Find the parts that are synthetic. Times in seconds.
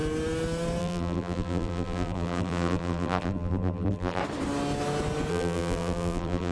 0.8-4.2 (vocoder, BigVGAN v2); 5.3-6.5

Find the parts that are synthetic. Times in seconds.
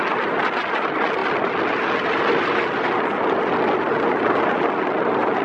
none